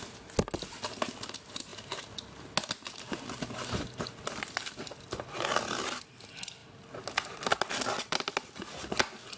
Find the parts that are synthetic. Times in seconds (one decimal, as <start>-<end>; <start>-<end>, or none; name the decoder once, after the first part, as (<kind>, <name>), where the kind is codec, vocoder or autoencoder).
none